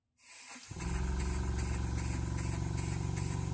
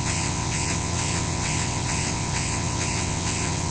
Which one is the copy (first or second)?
second